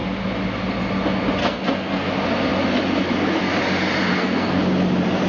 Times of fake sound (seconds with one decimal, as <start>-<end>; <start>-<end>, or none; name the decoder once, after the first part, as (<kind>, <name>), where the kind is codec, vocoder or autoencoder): 1.4-2.1 (codec, SNAC); 4.1-4.6